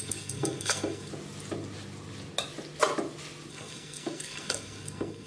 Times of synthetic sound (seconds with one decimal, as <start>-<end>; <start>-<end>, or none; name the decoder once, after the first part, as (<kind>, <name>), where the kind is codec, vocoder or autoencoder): 0.0-1.1 (codec, SNAC); 3.5-5.3